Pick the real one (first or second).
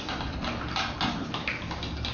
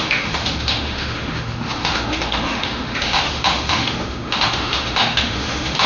first